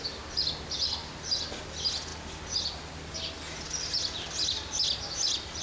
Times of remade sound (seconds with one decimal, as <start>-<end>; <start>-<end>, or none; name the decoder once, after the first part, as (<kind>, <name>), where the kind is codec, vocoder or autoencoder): none